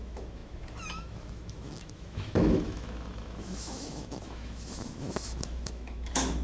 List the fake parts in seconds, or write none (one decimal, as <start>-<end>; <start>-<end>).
0.0-6.4